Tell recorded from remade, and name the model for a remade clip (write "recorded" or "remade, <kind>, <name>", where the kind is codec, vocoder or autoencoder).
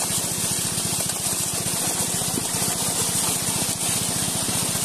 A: recorded